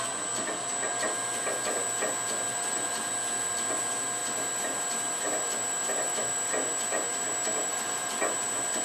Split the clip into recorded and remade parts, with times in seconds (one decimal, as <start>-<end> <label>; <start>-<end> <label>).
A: 0.0-2.5 recorded; 2.5-3.1 remade; 3.1-7.7 recorded; 7.7-8.2 remade; 8.2-8.8 recorded